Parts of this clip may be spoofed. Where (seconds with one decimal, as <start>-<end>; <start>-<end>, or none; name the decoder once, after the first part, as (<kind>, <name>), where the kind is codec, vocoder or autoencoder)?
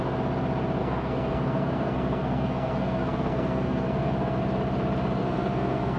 0.8-4.4 (codec, SNAC); 5.2-6.0